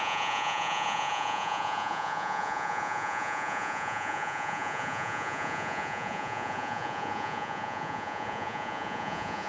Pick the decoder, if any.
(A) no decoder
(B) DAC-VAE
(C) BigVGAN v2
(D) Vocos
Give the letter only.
D